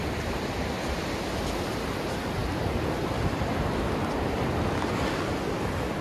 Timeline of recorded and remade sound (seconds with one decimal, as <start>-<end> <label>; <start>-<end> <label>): 0.0-6.0 recorded